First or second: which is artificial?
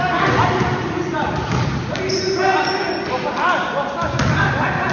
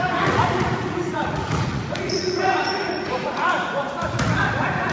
second